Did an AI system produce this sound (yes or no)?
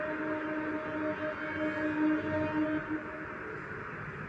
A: no